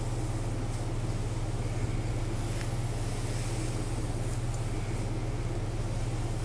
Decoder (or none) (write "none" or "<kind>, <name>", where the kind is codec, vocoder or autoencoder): none